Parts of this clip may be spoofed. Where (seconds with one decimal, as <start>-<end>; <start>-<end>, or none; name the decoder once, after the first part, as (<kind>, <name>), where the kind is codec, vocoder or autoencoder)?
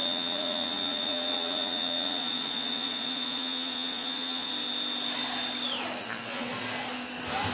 0.0-4.5 (vocoder, Vocos); 6.0-6.5